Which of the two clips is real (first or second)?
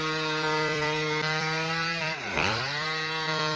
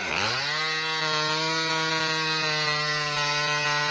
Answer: second